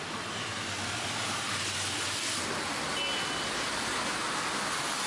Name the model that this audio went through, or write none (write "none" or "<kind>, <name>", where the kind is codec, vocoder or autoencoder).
none